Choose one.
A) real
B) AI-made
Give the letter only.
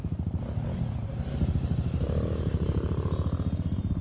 A